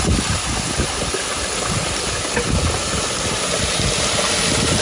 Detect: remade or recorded recorded